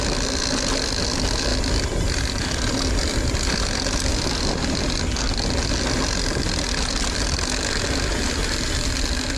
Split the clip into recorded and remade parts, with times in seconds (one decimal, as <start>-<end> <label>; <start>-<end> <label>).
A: 0.0-9.4 recorded